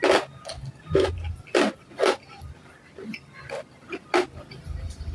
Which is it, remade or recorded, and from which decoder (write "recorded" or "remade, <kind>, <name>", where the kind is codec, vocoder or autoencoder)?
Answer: recorded